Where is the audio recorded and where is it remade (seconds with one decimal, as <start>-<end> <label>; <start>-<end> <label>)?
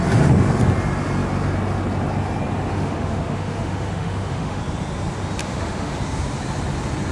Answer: 0.0-2.7 recorded; 2.7-4.6 remade; 4.6-5.4 recorded; 5.4-6.0 remade; 6.0-7.1 recorded